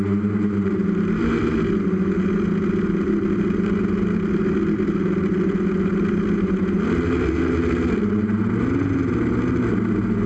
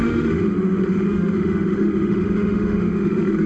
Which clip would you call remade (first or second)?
second